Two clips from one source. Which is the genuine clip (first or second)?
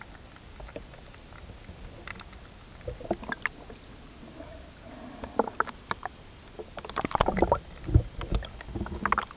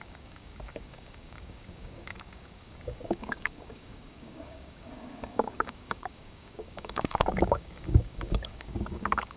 first